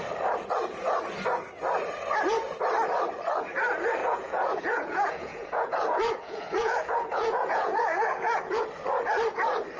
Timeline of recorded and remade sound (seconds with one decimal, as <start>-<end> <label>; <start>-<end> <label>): 0.0-4.0 recorded; 4.0-8.6 remade; 8.6-9.8 recorded